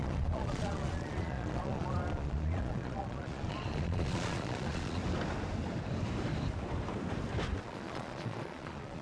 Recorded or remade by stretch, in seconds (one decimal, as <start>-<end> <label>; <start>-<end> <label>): 0.0-5.0 remade; 5.0-7.6 recorded; 7.6-9.0 remade